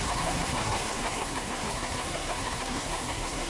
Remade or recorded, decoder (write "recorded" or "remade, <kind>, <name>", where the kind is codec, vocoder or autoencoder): remade, codec, SNAC